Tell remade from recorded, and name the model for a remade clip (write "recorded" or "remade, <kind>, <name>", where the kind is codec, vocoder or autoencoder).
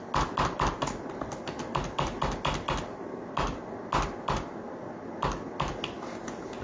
recorded